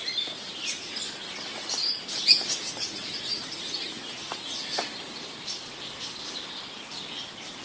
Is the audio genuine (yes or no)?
yes